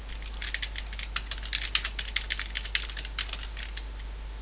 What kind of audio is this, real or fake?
real